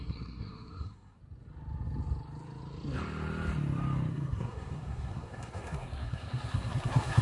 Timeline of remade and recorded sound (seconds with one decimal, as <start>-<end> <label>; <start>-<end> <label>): 0.0-1.2 remade; 1.2-4.1 recorded; 4.1-7.2 remade